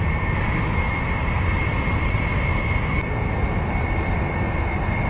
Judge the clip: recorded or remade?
recorded